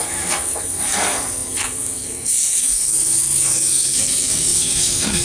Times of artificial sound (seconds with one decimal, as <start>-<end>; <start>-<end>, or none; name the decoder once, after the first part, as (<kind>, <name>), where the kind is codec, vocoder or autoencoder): 0.0-5.2 (codec, SNAC)